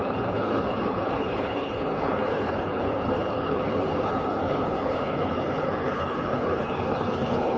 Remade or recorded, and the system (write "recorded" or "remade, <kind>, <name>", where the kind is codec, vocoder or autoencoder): remade, codec, HILCodec